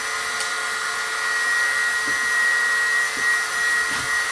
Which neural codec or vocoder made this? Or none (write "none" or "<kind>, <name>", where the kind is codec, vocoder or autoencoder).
none